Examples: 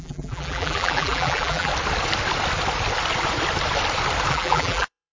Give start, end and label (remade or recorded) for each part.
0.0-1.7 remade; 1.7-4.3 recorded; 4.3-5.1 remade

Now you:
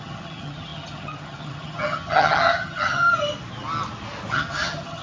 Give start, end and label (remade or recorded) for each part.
0.0-3.1 remade; 3.1-4.3 recorded; 4.3-5.0 remade

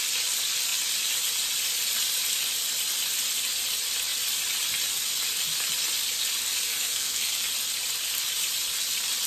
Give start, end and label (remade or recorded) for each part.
0.0-6.7 recorded; 6.7-7.3 remade; 7.3-9.3 recorded

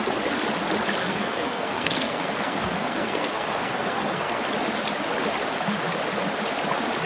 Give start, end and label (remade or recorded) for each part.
0.0-1.0 recorded; 1.0-4.4 remade; 4.4-7.0 recorded

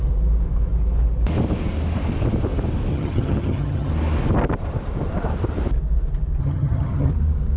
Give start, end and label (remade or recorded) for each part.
0.0-2.9 recorded; 2.9-3.9 remade; 3.9-6.4 recorded; 6.4-7.1 remade; 7.1-7.6 recorded

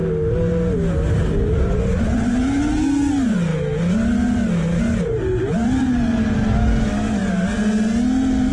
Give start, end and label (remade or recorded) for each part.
0.0-8.5 recorded